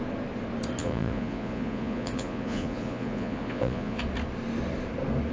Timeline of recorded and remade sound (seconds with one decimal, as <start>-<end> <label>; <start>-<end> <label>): 0.0-0.8 recorded; 0.8-4.0 remade; 4.0-5.3 recorded